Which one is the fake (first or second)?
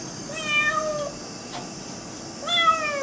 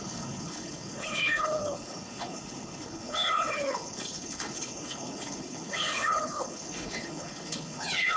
second